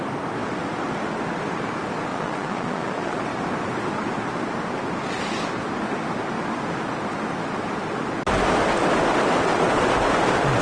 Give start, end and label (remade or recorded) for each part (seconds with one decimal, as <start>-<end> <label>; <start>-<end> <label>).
0.0-2.1 recorded; 2.1-3.2 remade; 3.2-10.6 recorded